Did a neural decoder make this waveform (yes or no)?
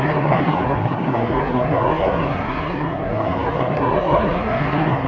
yes